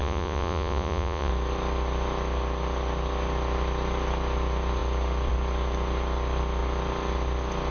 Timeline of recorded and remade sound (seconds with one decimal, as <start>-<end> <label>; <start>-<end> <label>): 0.0-1.3 remade; 1.3-7.7 recorded